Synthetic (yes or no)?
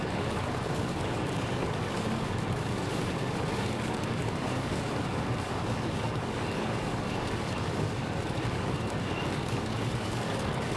yes